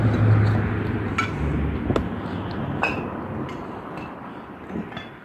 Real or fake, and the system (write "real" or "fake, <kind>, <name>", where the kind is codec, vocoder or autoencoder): real